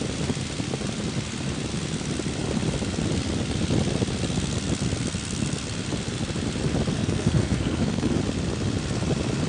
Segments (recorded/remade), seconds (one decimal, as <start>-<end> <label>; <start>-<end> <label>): 0.0-7.0 recorded; 7.0-8.2 remade; 8.2-9.5 recorded